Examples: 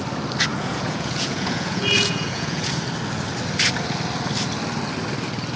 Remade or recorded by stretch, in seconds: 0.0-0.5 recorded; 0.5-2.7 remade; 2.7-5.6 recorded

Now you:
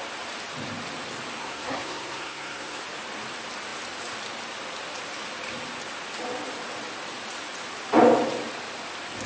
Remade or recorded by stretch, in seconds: 0.0-1.4 recorded; 1.4-2.8 remade; 2.8-9.3 recorded

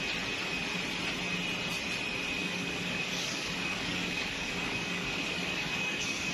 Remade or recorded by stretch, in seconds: 0.0-2.4 recorded; 2.4-6.3 remade

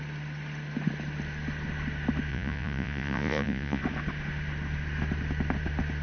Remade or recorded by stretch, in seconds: 0.0-2.3 recorded; 2.3-3.8 remade; 3.8-6.0 recorded

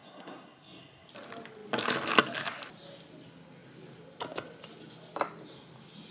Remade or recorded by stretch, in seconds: 0.0-1.1 remade; 1.1-6.1 recorded